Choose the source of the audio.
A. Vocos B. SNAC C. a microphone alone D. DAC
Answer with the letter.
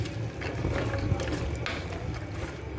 C